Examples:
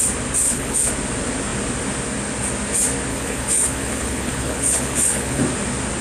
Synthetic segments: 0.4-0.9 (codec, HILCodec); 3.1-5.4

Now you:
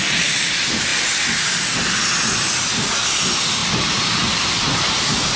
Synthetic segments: none

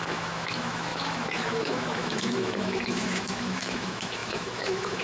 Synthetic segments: 0.0-5.0 (autoencoder, DAC-VAE)

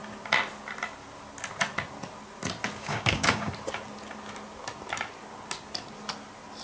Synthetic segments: 2.8-3.5 (codec, DAC)

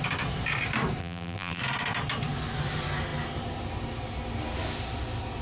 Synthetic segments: 1.0-1.6 (vocoder, BigVGAN v2)

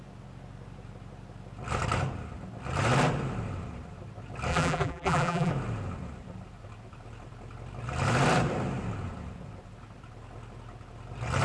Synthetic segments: 4.5-5.5 (vocoder, BigVGAN v2)

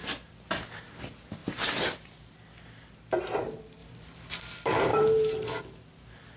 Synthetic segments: 1.4-2.2 (vocoder, BigVGAN v2); 3.8-4.4; 4.9-5.6

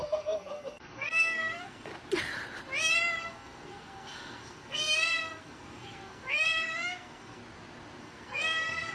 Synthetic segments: 0.0-1.9 (codec, SNAC); 3.2-7.4; 8.0-8.9